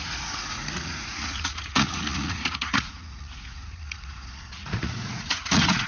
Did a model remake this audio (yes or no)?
yes